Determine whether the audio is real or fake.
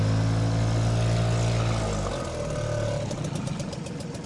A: real